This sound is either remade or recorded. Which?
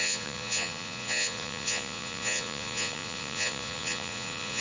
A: remade